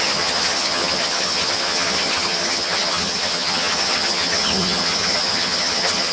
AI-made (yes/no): yes